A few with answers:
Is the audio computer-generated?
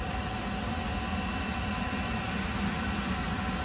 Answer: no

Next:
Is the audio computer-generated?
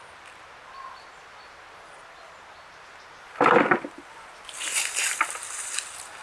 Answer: no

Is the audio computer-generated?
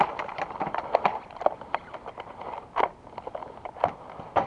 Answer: no